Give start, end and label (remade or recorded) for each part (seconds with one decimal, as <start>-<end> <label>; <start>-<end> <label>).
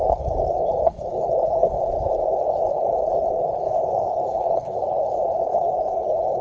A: 0.0-6.4 remade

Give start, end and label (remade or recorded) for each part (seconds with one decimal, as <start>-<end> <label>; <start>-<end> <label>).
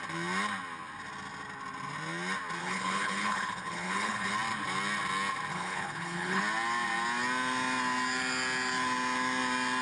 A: 0.0-2.6 recorded; 2.6-4.3 remade; 4.3-5.5 recorded; 5.5-6.4 remade; 6.4-9.8 recorded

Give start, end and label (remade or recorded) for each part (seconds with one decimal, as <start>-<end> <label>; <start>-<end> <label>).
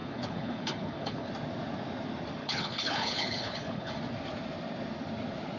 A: 0.0-1.3 remade; 1.3-2.4 recorded; 2.4-3.9 remade; 3.9-5.6 recorded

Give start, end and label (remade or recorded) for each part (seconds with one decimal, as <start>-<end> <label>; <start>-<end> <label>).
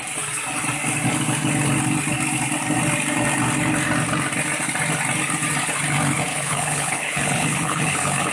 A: 0.0-6.3 recorded; 6.3-8.3 remade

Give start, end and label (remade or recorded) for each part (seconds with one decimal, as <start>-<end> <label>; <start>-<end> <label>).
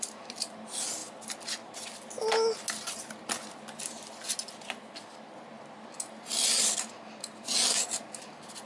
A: 0.0-8.7 recorded